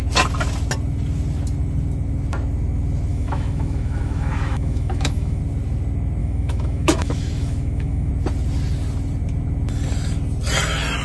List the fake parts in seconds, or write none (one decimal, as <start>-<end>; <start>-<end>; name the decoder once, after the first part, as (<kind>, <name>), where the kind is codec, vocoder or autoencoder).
3.1-5.4 (autoencoder, DAC-VAE); 6.2-8.1